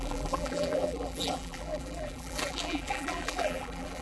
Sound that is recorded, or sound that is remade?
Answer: remade